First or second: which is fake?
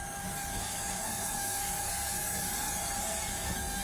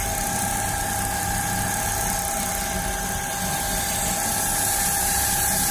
first